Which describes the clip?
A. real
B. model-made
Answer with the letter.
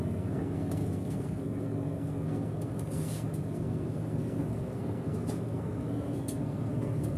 B